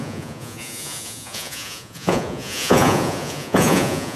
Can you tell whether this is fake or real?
fake